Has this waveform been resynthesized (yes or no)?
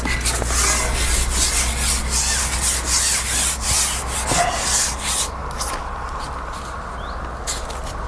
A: no